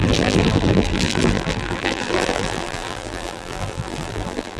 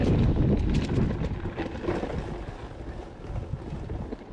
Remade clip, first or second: first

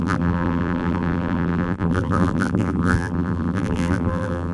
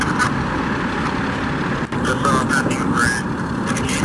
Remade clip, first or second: first